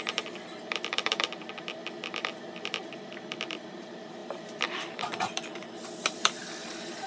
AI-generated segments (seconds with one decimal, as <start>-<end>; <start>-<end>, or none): 0.0-1.8; 2.9-6.4